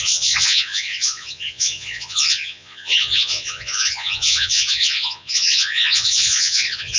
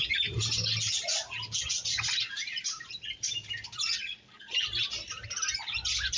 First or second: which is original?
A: second